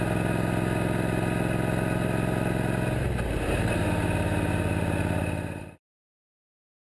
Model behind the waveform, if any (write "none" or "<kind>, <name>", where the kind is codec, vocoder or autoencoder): none